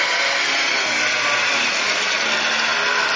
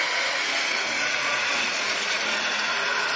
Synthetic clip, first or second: second